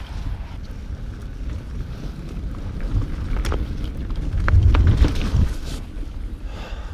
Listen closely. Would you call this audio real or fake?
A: real